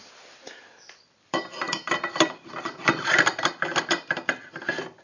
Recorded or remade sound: remade